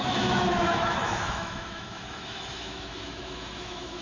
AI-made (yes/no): yes